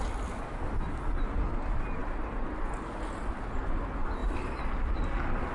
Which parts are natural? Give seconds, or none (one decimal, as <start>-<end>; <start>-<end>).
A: 0.0-2.0; 3.3-5.5